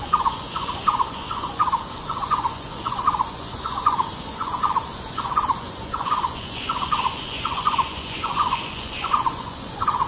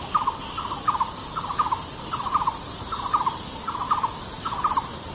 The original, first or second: second